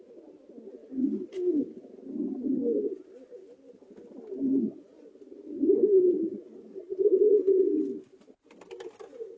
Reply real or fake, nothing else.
real